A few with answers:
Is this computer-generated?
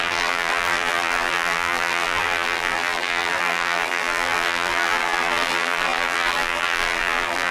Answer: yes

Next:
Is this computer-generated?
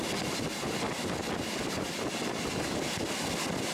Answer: no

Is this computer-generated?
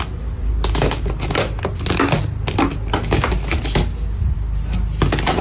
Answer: no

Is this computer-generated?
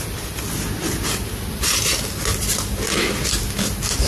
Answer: no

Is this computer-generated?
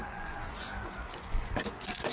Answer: yes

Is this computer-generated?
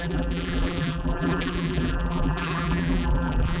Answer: yes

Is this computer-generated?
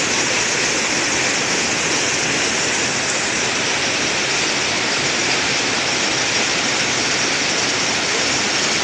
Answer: no